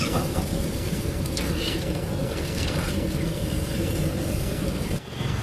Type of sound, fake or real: fake